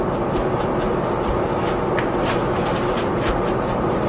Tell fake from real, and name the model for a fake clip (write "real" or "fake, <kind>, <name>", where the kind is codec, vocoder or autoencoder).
real